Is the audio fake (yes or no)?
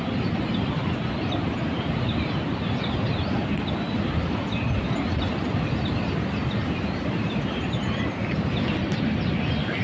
no